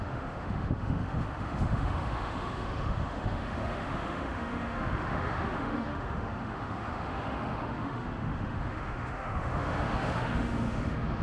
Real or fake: fake